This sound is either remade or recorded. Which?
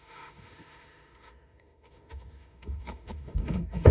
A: remade